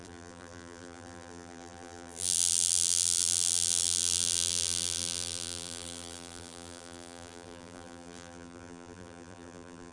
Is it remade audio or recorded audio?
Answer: remade